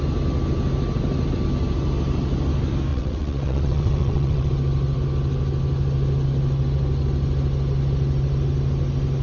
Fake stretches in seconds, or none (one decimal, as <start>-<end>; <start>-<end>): 2.9-4.5